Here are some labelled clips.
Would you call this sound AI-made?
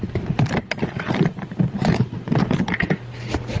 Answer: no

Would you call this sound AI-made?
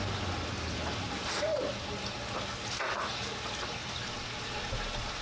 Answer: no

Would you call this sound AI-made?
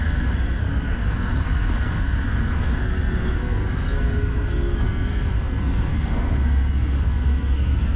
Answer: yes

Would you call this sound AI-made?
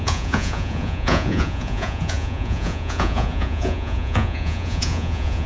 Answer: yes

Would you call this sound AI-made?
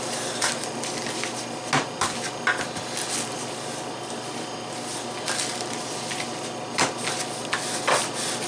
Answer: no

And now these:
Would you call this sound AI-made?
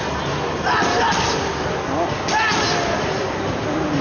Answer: no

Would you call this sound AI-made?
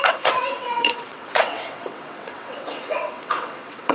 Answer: yes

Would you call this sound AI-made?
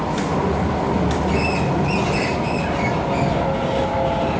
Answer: no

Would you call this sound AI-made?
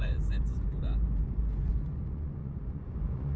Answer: yes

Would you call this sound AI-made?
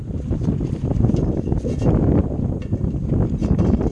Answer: no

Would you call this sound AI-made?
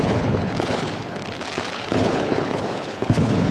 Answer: yes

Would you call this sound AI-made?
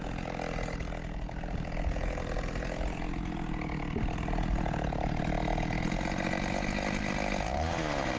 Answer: no